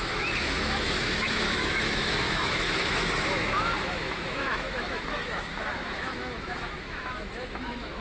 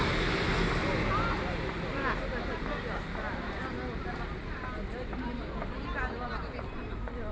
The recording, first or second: second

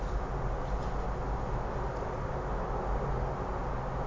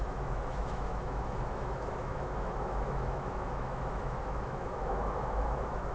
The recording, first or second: first